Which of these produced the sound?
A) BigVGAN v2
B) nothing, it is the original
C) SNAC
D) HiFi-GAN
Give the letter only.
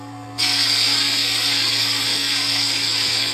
C